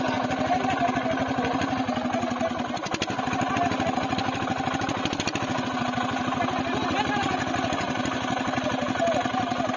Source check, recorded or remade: recorded